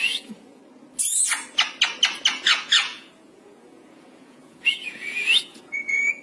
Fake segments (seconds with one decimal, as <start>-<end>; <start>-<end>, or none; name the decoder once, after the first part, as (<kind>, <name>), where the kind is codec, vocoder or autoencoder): 0.0-0.6 (vocoder, Vocos); 2.3-6.2